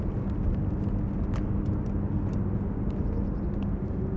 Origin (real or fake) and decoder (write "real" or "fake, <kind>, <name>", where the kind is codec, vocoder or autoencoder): real